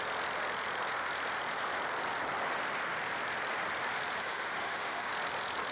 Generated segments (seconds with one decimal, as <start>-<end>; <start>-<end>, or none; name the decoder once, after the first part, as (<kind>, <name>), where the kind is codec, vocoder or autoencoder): 4.2-5.1 (autoencoder, DAC-VAE)